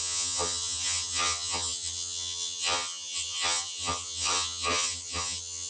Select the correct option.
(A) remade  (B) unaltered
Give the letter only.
A